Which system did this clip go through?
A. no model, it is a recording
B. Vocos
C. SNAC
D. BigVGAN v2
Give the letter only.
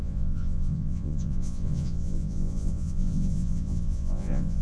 B